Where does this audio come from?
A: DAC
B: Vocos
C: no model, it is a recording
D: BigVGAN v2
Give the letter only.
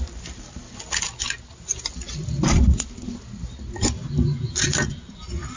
C